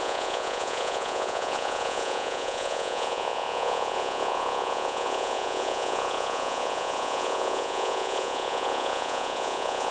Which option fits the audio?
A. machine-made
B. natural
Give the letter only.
A